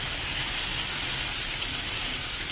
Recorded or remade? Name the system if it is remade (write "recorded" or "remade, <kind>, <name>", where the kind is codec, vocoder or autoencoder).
recorded